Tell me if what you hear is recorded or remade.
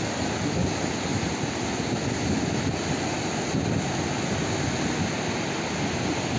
recorded